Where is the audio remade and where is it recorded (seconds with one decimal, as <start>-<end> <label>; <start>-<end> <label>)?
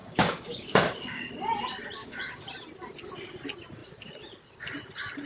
0.0-1.3 remade; 1.3-2.0 recorded; 2.0-2.5 remade; 2.5-5.3 recorded